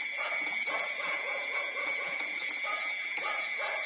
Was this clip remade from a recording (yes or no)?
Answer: yes